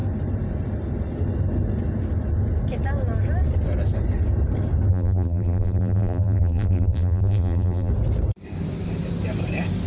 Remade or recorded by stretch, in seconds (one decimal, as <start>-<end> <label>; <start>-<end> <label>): 0.0-4.9 recorded; 4.9-7.9 remade; 7.9-9.9 recorded